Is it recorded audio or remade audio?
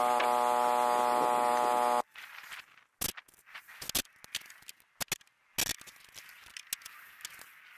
recorded